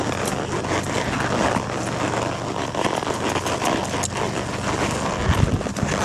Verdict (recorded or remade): recorded